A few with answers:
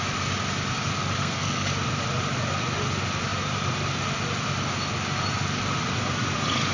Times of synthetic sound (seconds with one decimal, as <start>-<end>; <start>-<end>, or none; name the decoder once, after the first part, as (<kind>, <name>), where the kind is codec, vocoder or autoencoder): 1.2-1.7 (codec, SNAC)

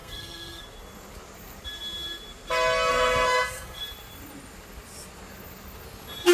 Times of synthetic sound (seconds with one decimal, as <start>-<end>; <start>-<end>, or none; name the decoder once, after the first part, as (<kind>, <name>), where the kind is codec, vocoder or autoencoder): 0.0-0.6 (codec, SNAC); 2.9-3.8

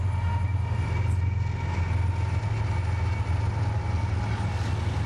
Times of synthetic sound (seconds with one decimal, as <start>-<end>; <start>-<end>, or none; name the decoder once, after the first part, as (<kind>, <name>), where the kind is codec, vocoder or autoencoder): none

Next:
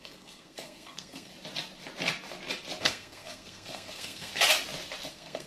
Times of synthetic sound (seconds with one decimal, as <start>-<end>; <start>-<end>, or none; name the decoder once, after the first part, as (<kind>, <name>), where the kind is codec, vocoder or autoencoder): 0.0-1.3 (codec, SNAC); 2.8-4.3; 5.1-5.5

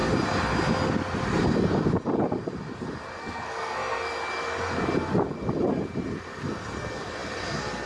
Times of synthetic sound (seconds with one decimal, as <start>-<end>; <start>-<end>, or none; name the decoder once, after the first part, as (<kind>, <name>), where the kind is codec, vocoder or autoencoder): 3.2-4.1 (codec, SNAC)